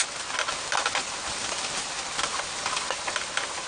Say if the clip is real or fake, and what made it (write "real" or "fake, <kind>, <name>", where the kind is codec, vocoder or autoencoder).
real